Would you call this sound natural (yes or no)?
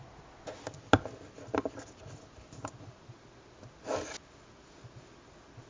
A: yes